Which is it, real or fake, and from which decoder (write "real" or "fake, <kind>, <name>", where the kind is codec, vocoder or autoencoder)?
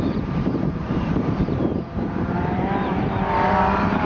fake, vocoder, BigVGAN v2